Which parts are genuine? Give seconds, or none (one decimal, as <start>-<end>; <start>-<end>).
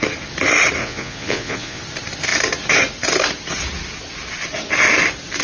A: 0.0-0.8; 1.8-5.4